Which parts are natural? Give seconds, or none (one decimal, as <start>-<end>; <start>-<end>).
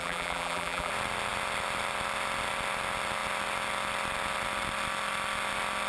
0.9-5.9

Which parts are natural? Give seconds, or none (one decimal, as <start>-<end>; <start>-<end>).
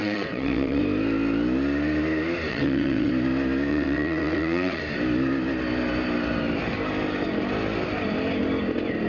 0.8-2.5; 3.1-3.7; 4.8-9.1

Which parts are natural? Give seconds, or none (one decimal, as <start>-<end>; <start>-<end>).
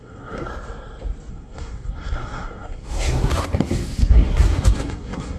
0.5-1.3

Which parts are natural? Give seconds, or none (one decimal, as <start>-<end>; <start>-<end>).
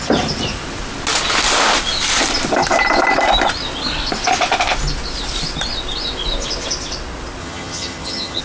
0.0-7.4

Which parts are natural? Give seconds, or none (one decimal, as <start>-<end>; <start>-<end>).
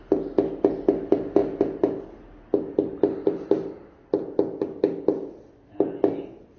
0.0-6.6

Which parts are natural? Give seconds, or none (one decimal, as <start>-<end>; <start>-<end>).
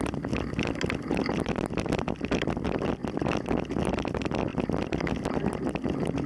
0.0-3.0; 3.9-4.5; 5.0-6.3